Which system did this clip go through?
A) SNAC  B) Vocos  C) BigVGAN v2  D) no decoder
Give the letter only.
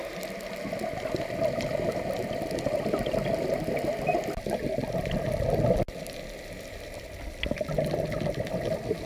D